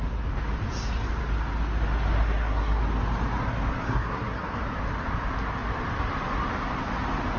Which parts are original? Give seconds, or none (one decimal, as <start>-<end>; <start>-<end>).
0.0-2.2; 2.8-3.8; 4.6-7.4